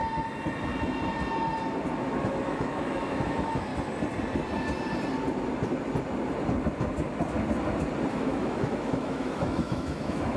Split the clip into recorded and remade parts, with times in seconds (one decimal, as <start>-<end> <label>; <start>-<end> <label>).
0.0-2.2 recorded; 2.2-3.7 remade; 3.7-8.1 recorded; 8.1-10.4 remade